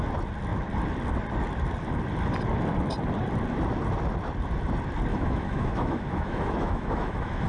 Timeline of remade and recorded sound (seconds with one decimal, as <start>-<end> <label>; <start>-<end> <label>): 0.0-5.1 recorded; 5.1-7.5 remade